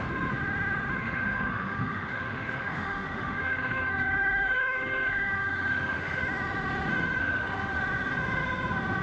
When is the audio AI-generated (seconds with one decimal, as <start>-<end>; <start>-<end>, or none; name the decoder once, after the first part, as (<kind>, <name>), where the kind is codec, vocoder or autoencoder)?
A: 1.0-6.2 (autoencoder, DAC-VAE); 7.2-7.8